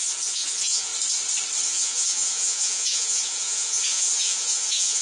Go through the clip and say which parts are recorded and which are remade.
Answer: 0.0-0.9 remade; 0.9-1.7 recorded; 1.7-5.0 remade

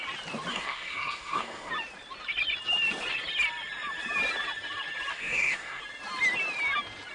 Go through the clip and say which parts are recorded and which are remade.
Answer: 0.0-0.5 recorded; 0.5-1.7 remade; 1.7-5.1 recorded; 5.1-5.8 remade; 5.8-7.1 recorded

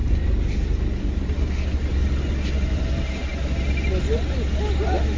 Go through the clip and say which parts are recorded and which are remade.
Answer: 0.0-5.2 recorded

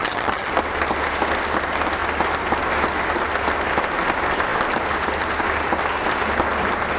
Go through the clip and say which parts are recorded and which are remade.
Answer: 0.0-0.5 remade; 0.5-7.0 recorded